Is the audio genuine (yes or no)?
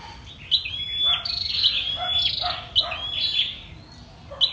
yes